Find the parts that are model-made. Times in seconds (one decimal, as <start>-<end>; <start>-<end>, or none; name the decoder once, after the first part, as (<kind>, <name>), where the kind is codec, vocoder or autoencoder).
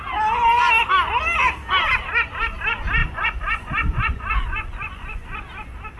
3.0-5.4 (vocoder, Vocos)